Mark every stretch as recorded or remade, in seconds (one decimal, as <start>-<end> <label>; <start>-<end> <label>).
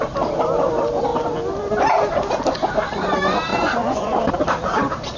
0.0-3.5 recorded; 3.5-4.2 remade; 4.2-5.2 recorded